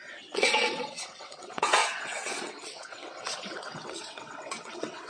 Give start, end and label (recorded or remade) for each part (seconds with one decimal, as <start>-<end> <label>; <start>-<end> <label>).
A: 0.0-5.1 remade